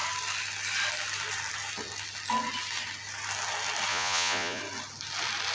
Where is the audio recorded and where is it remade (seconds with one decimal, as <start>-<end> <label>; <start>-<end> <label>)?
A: 0.0-3.9 recorded; 3.9-4.6 remade; 4.6-5.5 recorded